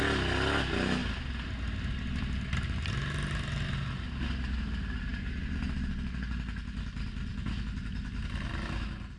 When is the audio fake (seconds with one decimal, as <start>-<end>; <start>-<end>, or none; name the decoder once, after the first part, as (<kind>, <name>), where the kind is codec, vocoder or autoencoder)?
none